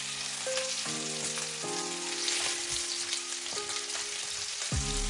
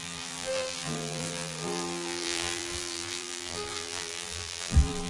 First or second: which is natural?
first